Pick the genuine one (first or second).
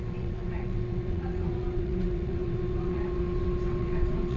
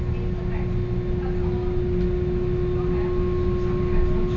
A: second